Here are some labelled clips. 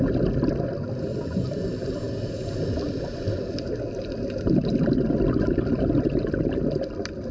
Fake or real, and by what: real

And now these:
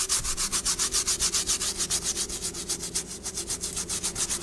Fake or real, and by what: real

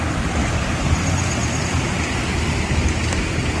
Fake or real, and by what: real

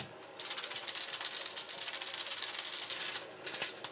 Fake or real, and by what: real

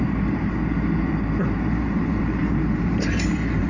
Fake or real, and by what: fake, vocoder, BigVGAN v2